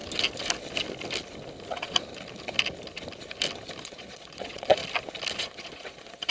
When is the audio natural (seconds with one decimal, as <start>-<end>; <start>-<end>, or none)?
0.0-3.8; 4.8-5.4